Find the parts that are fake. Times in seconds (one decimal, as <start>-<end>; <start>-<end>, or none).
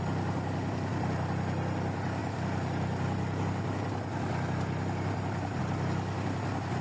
none